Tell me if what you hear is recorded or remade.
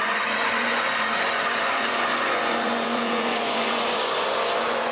remade